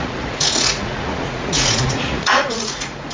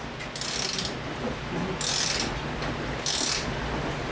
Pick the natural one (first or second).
second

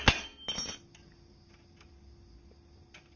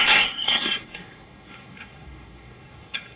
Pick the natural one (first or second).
first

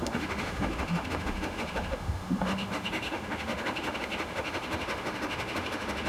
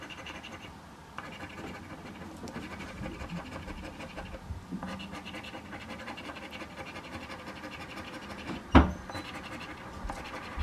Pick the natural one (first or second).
second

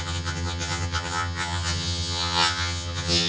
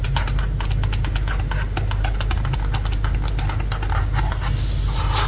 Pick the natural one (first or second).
second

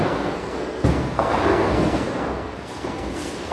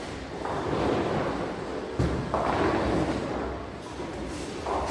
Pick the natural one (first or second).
second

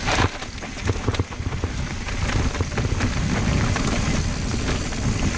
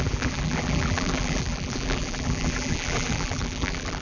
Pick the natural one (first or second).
first